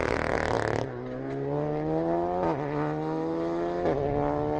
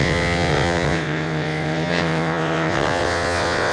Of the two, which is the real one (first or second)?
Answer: first